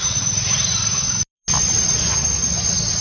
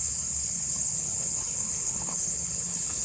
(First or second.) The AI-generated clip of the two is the second